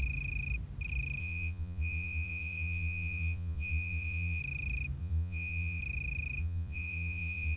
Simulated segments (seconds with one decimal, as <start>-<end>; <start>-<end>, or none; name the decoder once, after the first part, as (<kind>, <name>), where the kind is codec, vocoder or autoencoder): 1.2-4.4 (vocoder, Vocos); 5.0-5.8; 6.4-7.6